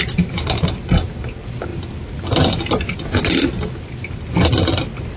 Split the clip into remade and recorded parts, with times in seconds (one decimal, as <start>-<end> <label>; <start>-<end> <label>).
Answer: 0.0-5.2 recorded

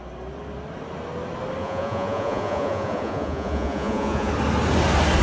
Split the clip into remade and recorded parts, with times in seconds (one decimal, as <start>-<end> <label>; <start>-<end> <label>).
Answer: 0.0-1.6 recorded; 1.6-4.3 remade; 4.3-5.2 recorded

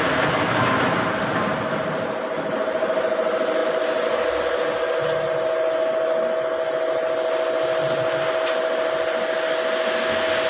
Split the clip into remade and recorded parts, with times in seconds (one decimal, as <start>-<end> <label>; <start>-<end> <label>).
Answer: 0.0-10.5 recorded